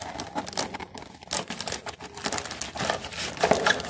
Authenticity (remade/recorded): recorded